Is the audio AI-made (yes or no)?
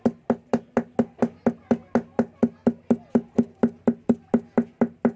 no